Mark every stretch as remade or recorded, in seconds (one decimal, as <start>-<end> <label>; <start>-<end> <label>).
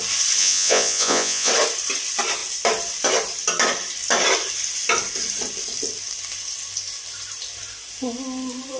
0.0-0.4 recorded; 0.4-1.5 remade; 1.5-8.8 recorded